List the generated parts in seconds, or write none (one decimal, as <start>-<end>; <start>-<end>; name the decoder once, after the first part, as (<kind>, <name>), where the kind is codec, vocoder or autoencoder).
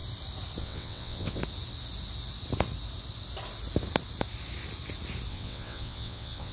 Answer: 0.6-1.4 (vocoder, WaveNeXt); 5.3-6.5